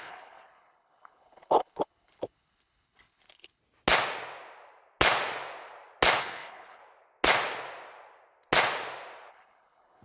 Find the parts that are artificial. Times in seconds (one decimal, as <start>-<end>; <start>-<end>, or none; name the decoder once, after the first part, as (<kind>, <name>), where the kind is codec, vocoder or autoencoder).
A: 0.0-3.6 (codec, HILCodec); 6.2-6.8; 9.3-10.0